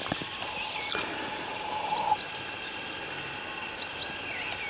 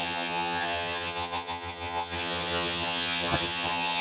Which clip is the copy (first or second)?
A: second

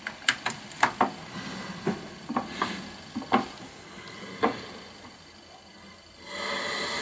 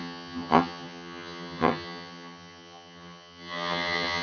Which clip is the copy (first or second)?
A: second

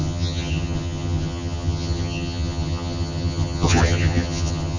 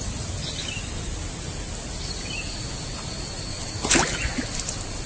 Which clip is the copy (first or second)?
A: first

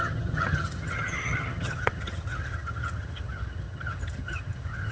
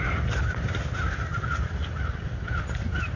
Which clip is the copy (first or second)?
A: first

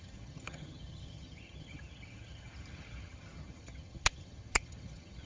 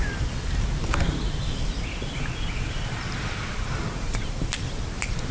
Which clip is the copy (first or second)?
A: first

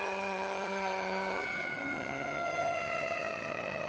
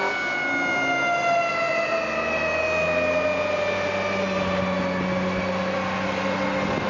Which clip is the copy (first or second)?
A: first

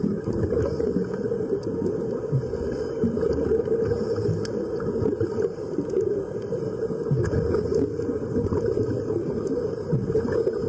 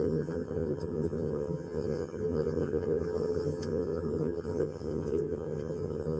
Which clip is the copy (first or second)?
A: second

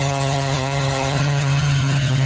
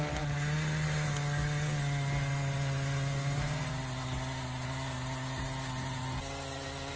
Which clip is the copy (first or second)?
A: first